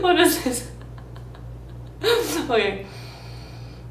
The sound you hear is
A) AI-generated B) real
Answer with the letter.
B